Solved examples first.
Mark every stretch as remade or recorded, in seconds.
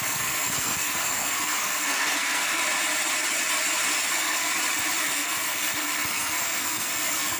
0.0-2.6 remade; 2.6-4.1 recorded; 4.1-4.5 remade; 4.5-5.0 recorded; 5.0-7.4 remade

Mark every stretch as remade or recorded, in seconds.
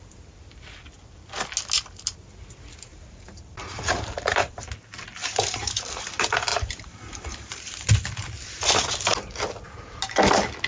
0.0-2.9 recorded; 2.9-4.7 remade; 4.7-5.2 recorded; 5.2-6.1 remade; 6.1-6.5 recorded; 6.5-7.9 remade; 7.9-10.7 recorded